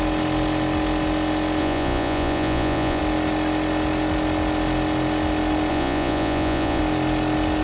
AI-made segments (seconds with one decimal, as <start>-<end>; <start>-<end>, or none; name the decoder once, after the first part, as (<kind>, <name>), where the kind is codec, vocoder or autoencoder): 1.6-3.0 (vocoder, Vocos); 5.7-6.8